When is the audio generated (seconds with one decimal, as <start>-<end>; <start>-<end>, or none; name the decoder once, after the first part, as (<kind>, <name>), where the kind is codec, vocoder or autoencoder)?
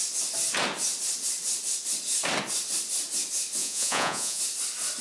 3.6-4.4 (vocoder, Vocos)